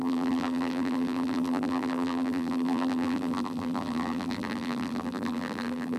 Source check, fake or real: fake